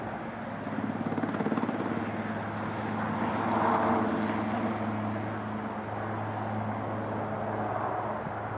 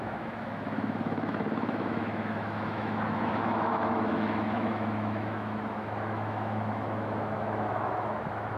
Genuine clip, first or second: first